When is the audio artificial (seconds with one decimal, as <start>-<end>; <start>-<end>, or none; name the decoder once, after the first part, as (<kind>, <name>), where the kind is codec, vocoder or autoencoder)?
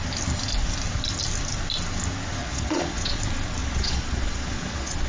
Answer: 2.4-3.2 (vocoder, Vocos); 3.6-5.1